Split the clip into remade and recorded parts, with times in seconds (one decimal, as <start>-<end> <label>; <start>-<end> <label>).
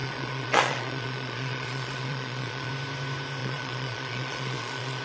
0.0-2.7 remade; 2.7-3.4 recorded; 3.4-5.0 remade